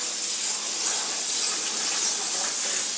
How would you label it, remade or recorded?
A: recorded